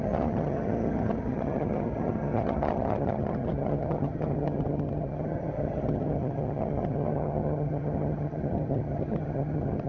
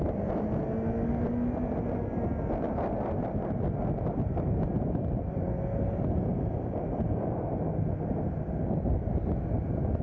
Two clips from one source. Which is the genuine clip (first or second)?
second